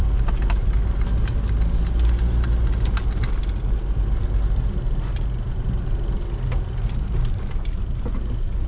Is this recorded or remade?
recorded